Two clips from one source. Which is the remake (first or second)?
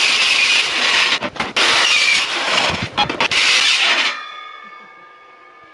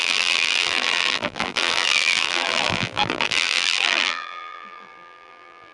second